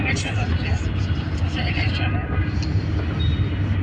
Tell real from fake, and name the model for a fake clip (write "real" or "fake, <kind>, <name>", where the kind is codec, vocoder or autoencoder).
real